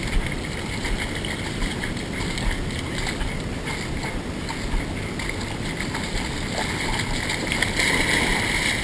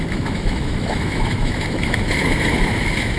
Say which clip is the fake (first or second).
second